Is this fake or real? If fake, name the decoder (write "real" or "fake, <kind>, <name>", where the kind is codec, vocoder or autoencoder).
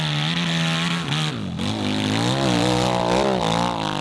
real